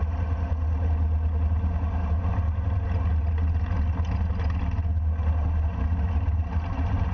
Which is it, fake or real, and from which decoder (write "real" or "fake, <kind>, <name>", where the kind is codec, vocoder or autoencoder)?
real